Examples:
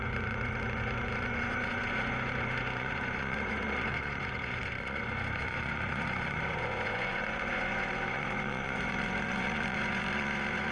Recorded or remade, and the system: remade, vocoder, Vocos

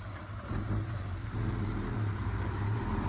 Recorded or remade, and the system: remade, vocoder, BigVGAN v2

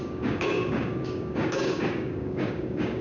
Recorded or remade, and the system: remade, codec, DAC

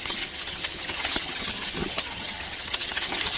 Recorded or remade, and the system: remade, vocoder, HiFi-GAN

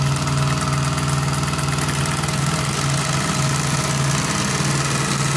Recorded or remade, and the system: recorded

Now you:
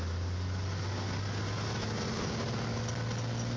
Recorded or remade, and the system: recorded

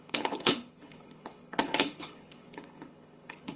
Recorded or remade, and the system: remade, codec, HILCodec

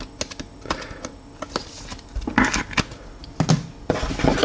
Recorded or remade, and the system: recorded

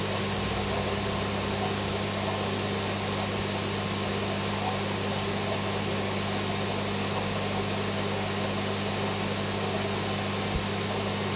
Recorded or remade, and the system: recorded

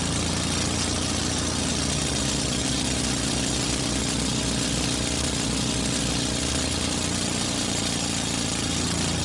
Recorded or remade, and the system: recorded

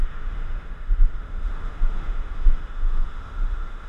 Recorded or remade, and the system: remade, autoencoder, DAC-VAE